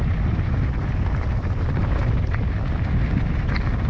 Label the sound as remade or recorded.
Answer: recorded